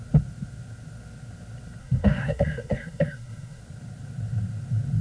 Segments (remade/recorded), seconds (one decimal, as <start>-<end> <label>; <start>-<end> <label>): 0.0-1.8 recorded; 1.8-3.6 remade; 3.6-5.0 recorded